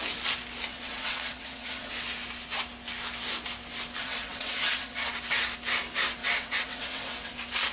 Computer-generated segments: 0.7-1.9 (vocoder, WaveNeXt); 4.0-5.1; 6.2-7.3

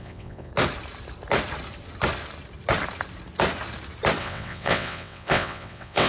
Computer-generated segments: 0.0-0.5 (vocoder, WaveNeXt); 4.2-6.1